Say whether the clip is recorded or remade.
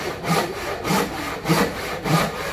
remade